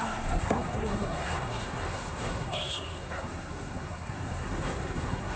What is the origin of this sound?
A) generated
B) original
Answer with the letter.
A